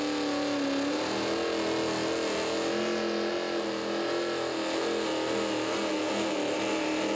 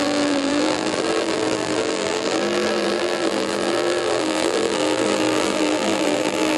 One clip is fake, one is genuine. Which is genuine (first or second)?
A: first